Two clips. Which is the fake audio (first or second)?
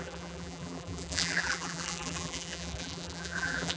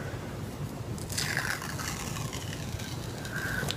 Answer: first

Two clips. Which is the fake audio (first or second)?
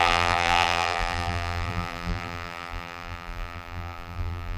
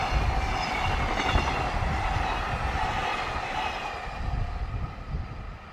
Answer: first